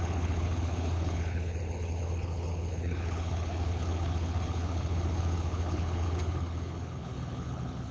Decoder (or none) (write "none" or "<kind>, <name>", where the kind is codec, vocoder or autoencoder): codec, HILCodec